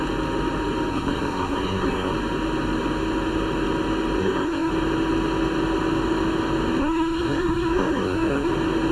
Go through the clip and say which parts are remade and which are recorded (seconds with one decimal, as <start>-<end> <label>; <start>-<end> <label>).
0.0-0.9 recorded; 0.9-2.1 remade; 2.1-4.2 recorded; 4.2-4.7 remade; 4.7-6.8 recorded; 6.8-8.5 remade; 8.5-8.9 recorded